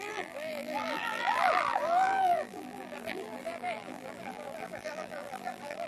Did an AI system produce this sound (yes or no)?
yes